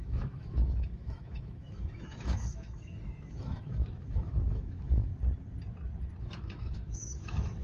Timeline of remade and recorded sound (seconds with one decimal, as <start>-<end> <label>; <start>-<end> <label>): 0.0-5.1 remade; 5.1-6.2 recorded; 6.2-7.6 remade